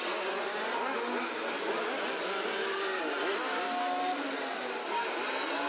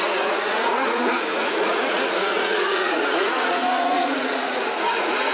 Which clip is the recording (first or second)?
first